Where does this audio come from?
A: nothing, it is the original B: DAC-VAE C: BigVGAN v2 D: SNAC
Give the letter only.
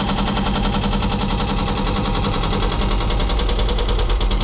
A